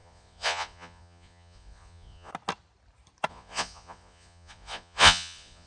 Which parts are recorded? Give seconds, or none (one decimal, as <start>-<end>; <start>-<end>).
2.3-3.3